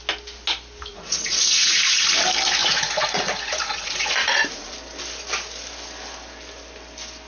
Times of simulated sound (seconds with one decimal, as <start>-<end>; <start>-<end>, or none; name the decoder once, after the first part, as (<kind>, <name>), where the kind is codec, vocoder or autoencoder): 0.9-2.1 (vocoder, Vocos); 2.6-4.7